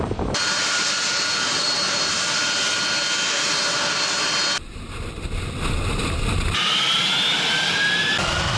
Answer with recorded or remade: recorded